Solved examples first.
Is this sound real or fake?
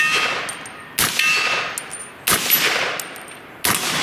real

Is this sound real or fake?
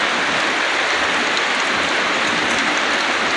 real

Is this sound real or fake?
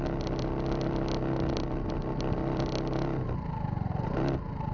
real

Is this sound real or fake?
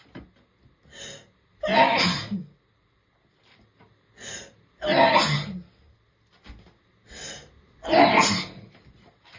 real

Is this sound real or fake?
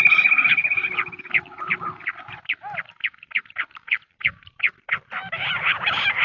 fake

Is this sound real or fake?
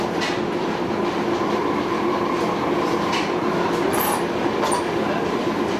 real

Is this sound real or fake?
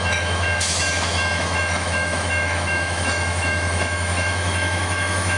fake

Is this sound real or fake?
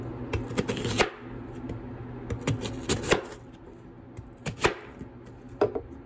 real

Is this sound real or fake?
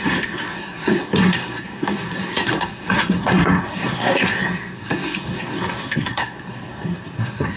fake